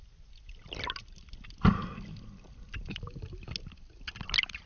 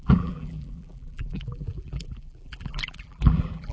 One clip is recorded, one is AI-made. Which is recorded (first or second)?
first